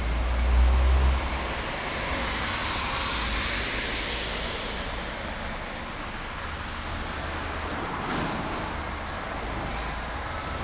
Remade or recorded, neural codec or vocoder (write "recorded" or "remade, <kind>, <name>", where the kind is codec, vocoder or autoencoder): recorded